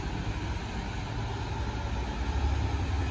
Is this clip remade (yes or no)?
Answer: no